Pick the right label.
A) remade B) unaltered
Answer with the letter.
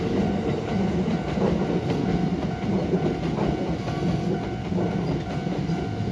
B